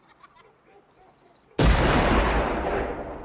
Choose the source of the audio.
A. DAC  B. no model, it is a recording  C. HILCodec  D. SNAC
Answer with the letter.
B